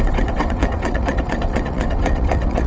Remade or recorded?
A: remade